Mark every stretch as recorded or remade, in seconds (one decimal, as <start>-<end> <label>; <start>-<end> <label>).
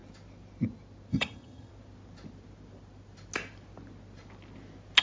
0.0-1.1 recorded; 1.1-1.7 remade; 1.7-5.0 recorded